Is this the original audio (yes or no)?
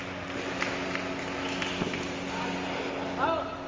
yes